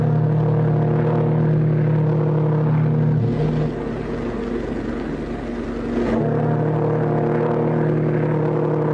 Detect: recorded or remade recorded